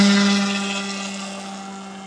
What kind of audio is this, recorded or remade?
recorded